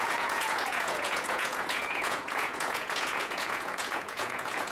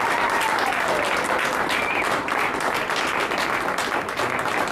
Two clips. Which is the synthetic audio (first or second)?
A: first